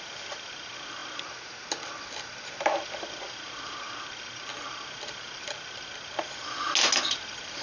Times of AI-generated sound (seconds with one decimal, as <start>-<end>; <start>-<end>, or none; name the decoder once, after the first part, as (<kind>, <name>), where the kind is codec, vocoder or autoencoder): none